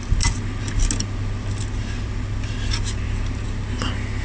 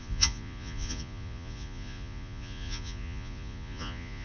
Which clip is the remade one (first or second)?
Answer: second